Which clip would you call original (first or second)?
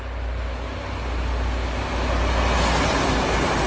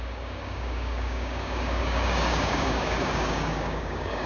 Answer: first